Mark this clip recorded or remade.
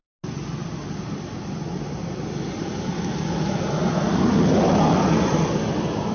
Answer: recorded